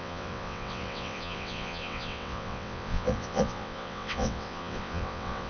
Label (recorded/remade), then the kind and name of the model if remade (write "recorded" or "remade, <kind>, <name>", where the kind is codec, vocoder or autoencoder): remade, vocoder, WaveNeXt